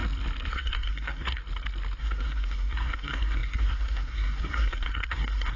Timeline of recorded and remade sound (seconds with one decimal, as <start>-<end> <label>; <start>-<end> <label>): 0.0-0.5 recorded; 0.5-1.4 remade; 1.4-2.0 recorded; 2.0-5.6 remade